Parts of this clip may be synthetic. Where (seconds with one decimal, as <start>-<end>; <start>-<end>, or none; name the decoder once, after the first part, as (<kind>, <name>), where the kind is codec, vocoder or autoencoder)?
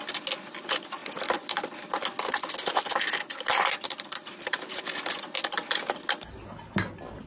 3.5-4.9 (vocoder, BigVGAN v2)